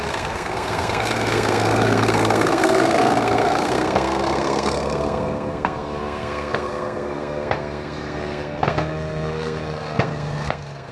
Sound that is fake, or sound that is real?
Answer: fake